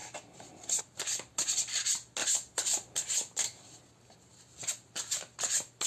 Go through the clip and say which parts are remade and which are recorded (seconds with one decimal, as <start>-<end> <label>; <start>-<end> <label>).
0.0-5.9 recorded